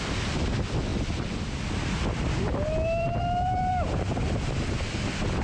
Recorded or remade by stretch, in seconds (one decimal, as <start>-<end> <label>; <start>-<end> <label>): 0.0-5.4 remade